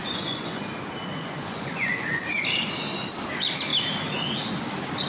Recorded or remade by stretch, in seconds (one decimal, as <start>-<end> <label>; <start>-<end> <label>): 0.0-0.6 remade; 0.6-1.1 recorded; 1.1-2.4 remade; 2.4-5.1 recorded